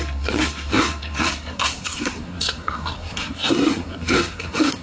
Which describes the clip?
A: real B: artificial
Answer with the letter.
B